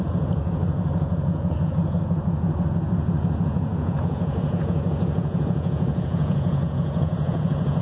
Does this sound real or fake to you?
fake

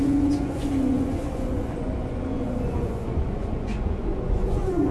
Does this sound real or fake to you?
fake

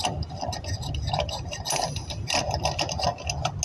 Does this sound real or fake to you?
real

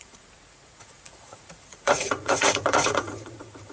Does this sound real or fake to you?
fake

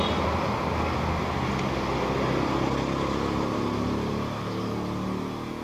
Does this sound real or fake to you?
real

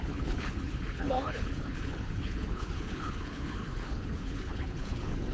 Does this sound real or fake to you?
fake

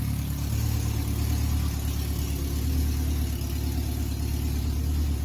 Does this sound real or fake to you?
real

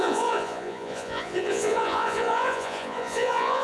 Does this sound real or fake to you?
fake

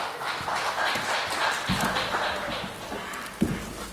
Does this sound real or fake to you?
real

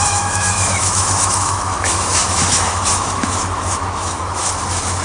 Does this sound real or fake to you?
fake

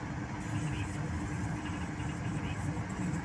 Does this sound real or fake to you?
real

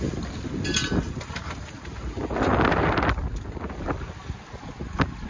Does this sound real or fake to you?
real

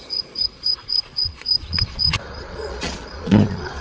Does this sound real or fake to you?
fake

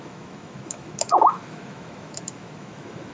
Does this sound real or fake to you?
fake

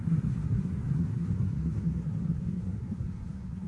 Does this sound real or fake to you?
fake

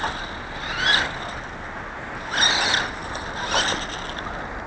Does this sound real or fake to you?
real